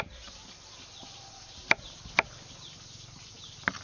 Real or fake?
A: real